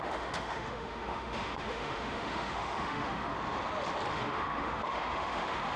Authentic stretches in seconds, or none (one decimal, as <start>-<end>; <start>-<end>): 3.3-4.1